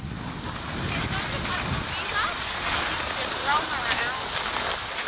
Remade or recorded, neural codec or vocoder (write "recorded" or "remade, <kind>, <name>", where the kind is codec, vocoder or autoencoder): recorded